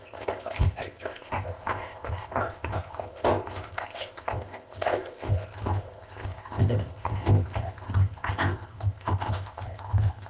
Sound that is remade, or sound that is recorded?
remade